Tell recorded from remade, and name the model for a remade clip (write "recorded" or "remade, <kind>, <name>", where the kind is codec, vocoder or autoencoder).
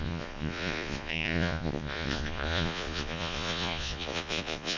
remade, vocoder, Vocos